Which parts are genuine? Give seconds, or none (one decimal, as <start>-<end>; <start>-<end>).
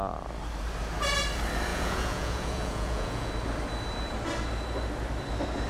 0.0-1.7; 3.3-5.7